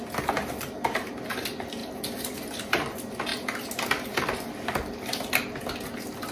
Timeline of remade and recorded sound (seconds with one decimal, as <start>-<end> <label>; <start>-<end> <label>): 0.0-1.8 recorded; 1.8-2.5 remade; 2.5-6.3 recorded